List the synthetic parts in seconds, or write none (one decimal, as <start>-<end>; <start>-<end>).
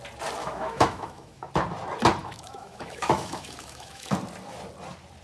0.4-1.5; 2.2-4.1